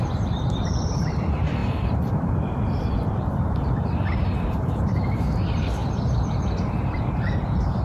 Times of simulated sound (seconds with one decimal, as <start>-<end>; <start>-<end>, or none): 0.0-5.8; 6.8-7.8